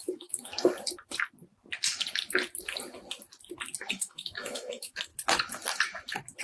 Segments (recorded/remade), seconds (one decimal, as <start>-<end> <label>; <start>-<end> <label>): 0.0-0.5 remade; 0.5-3.9 recorded; 3.9-5.1 remade; 5.1-6.4 recorded